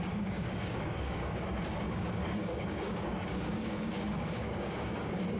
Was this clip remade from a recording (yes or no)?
yes